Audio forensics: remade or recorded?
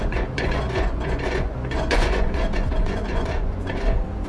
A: remade